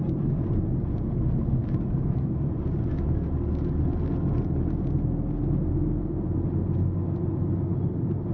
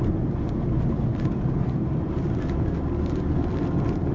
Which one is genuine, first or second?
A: first